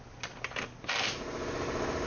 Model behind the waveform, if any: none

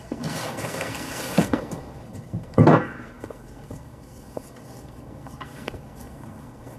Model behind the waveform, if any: codec, SNAC